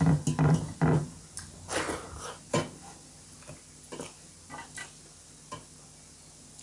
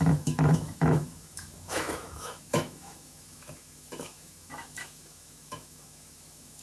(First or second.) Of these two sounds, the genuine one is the first